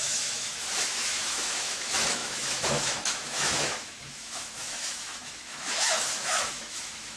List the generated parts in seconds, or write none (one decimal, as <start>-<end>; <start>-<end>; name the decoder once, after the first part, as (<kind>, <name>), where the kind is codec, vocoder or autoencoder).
0.0-7.2 (autoencoder, DAC-VAE)